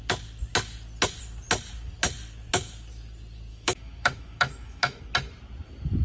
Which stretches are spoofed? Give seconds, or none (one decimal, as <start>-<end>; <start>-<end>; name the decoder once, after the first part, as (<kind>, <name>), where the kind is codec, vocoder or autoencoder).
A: 3.5-5.0 (autoencoder, DAC-VAE)